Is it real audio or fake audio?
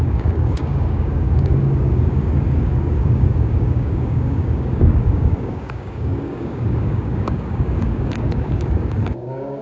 fake